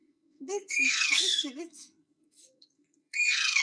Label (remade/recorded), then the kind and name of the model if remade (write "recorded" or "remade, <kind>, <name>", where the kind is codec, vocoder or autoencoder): remade, codec, SNAC